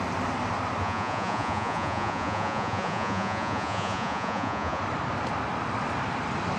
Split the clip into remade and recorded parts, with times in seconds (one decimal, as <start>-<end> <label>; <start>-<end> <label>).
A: 0.0-0.8 recorded; 0.8-4.8 remade; 4.8-6.6 recorded